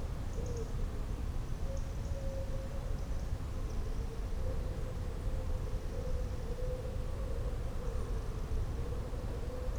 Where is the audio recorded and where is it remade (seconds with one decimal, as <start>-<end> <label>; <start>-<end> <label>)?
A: 0.0-9.8 recorded